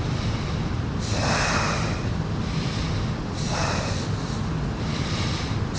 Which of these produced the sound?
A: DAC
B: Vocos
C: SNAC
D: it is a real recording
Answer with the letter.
D